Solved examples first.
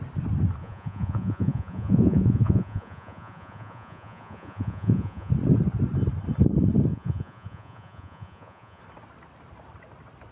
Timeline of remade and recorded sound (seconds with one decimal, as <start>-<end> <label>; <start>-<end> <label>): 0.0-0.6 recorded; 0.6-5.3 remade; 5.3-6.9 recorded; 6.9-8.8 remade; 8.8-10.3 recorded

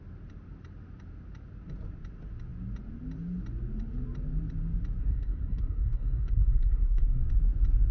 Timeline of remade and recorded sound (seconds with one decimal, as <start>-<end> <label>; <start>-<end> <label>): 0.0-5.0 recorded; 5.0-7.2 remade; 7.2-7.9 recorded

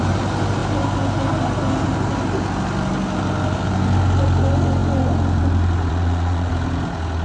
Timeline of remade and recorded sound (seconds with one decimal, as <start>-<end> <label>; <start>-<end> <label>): 0.0-5.9 recorded; 5.9-6.5 remade; 6.5-7.2 recorded

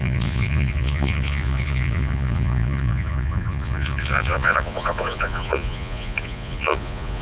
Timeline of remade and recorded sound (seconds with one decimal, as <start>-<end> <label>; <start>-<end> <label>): 0.0-7.2 remade